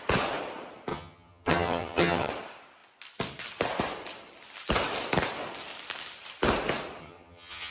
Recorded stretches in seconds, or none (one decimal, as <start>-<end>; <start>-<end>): 0.0-0.9; 2.3-7.0